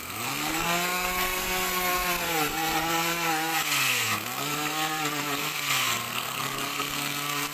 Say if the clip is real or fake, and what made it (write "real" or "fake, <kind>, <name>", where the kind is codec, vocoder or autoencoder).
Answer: fake, codec, SNAC